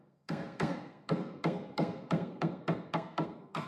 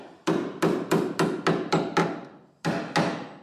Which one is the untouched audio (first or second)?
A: second